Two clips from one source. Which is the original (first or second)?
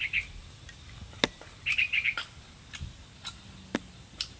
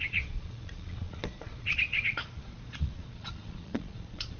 first